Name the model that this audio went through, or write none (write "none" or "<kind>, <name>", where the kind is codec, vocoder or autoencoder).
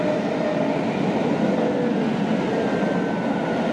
none